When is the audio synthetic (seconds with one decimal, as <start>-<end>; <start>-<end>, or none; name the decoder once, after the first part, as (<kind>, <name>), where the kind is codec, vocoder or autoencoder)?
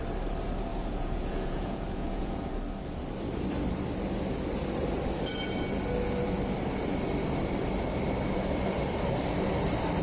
0.7-2.5 (vocoder, Vocos)